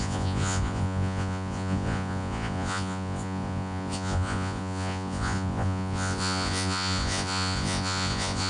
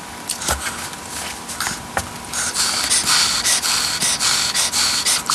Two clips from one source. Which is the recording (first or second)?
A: second